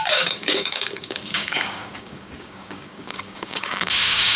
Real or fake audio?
fake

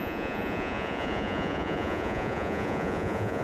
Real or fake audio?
fake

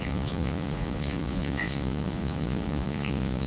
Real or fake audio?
fake